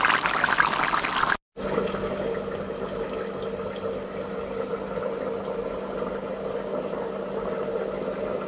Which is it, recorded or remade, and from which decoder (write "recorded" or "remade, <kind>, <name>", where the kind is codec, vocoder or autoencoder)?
recorded